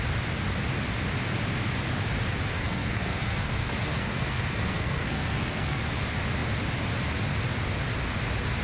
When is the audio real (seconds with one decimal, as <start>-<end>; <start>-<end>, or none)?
0.0-2.5; 5.8-8.6